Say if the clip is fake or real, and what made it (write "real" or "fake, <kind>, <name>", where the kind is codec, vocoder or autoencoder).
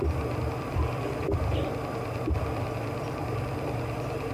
fake, vocoder, BigVGAN v2